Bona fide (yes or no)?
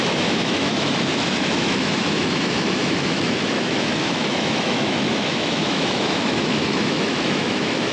no